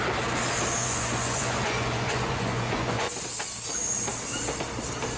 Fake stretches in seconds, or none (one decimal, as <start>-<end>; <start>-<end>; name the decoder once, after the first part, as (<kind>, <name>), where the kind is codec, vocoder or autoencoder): 0.8-3.2 (vocoder, Vocos)